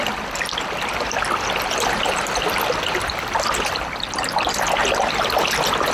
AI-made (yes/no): no